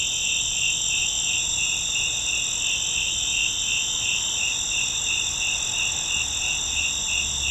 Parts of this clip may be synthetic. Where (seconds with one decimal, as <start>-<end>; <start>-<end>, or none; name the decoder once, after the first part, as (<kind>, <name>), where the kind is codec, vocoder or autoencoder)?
none